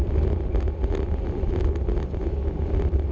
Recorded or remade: recorded